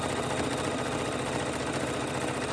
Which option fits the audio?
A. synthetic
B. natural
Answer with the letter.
B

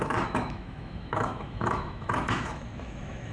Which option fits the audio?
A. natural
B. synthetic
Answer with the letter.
B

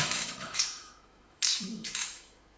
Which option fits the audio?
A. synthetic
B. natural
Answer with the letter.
A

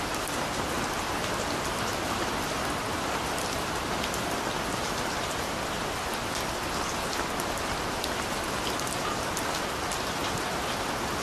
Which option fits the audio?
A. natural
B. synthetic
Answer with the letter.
A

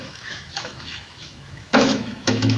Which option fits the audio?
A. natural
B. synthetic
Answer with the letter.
B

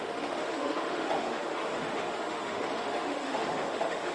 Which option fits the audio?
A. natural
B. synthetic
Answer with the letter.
B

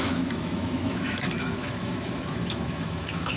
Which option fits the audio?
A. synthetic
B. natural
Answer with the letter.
A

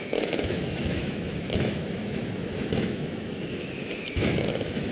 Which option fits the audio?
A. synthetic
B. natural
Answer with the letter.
A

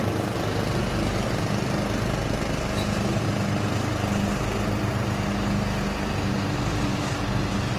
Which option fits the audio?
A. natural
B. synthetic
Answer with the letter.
A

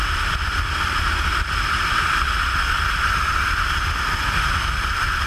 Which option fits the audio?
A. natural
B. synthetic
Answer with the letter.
A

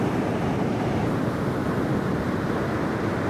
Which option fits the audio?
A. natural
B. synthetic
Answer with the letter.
A